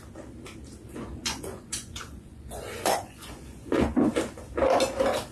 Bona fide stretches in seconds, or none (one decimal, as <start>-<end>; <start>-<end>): 0.0-0.9; 4.1-5.3